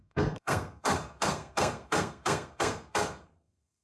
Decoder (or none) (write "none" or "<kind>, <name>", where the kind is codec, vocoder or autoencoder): codec, SNAC